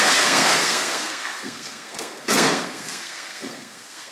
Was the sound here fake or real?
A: fake